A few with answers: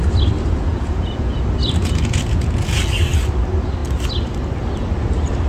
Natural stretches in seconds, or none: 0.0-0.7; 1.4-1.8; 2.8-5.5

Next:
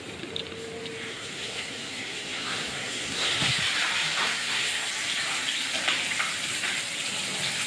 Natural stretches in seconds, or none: 0.0-1.1; 3.6-4.2; 4.9-7.7

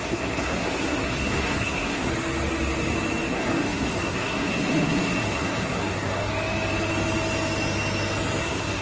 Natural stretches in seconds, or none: 2.1-3.3; 6.3-8.4

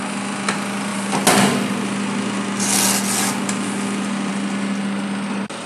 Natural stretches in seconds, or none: 0.0-5.7

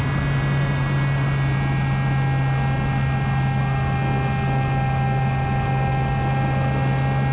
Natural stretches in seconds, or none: 0.0-7.3